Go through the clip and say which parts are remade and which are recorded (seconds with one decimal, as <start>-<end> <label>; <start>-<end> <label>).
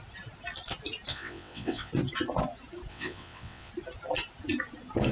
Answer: 0.0-1.1 recorded; 1.1-1.9 remade; 1.9-2.9 recorded; 2.9-3.7 remade; 3.7-5.1 recorded